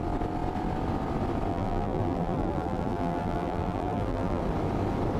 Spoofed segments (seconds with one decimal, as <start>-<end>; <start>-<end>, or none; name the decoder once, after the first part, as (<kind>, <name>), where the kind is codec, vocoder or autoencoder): 1.5-4.4 (vocoder, BigVGAN v2)